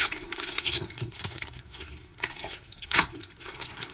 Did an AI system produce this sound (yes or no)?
yes